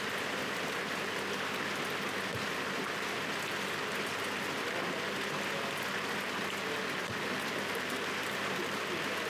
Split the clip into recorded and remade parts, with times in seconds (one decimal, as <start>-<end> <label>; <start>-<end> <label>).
0.0-9.3 recorded